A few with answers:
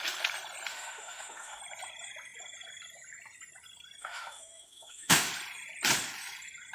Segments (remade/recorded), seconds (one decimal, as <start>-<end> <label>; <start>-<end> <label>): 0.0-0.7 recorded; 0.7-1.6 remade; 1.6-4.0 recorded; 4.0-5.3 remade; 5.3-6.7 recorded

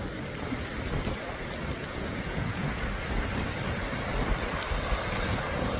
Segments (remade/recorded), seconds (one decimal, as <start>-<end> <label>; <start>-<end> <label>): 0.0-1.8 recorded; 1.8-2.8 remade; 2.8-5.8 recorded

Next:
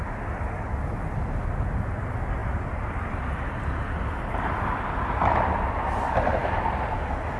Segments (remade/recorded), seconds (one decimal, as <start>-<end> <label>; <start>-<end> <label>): 0.0-7.4 recorded

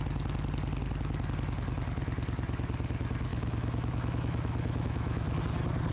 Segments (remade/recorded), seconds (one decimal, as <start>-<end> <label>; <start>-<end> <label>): 0.0-3.3 recorded; 3.3-5.4 remade; 5.4-5.9 recorded

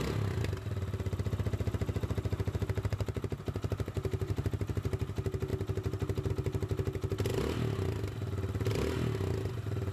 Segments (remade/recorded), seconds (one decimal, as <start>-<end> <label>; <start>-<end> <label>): 0.0-9.9 recorded

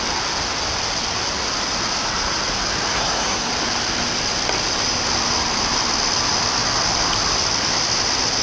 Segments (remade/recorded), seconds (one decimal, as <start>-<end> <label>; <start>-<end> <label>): 0.0-2.9 recorded; 2.9-3.5 remade; 3.5-8.4 recorded

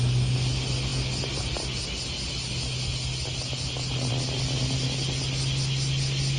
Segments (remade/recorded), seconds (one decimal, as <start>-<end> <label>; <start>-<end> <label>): 0.0-6.4 recorded